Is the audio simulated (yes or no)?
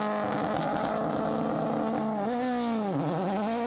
no